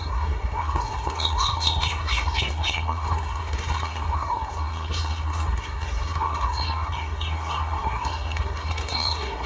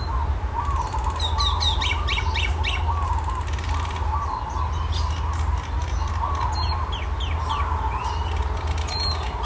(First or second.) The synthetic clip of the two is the first